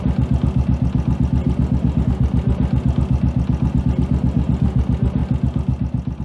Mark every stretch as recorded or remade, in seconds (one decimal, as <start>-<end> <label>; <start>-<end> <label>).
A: 0.0-6.2 recorded